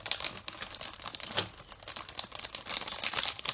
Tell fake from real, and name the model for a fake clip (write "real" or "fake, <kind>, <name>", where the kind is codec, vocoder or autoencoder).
real